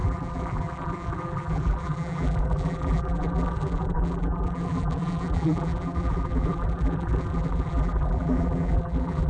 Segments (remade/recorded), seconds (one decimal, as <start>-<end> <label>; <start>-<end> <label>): 0.0-9.3 remade